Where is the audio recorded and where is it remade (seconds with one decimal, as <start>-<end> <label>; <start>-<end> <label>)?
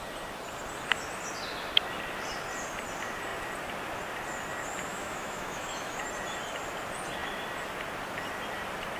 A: 0.0-4.9 recorded; 4.9-6.0 remade; 6.0-9.0 recorded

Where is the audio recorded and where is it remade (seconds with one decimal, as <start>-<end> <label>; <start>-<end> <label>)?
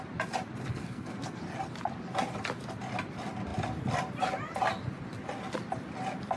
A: 0.0-0.7 recorded; 0.7-1.4 remade; 1.4-6.4 recorded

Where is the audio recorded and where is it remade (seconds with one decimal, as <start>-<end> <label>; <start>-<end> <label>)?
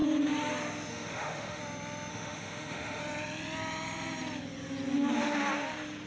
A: 0.0-0.9 recorded; 0.9-1.6 remade; 1.6-2.1 recorded; 2.1-3.0 remade; 3.0-6.1 recorded